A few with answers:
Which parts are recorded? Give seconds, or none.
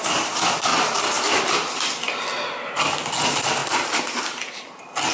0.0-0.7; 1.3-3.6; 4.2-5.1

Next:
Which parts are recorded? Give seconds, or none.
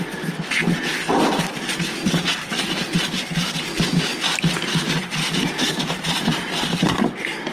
0.0-7.5